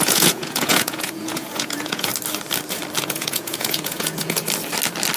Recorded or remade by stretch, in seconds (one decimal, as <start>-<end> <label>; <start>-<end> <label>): 0.0-2.1 remade; 2.1-3.0 recorded; 3.0-4.4 remade; 4.4-5.2 recorded